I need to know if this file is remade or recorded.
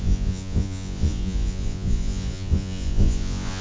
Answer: remade